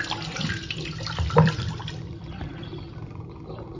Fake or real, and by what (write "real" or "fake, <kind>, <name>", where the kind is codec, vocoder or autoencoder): fake, vocoder, BigVGAN v2